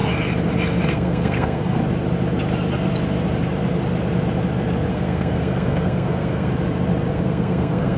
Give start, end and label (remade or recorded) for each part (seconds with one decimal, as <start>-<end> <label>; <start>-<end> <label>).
0.0-0.9 recorded; 0.9-1.8 remade; 1.8-4.9 recorded; 4.9-6.5 remade; 6.5-7.1 recorded; 7.1-8.0 remade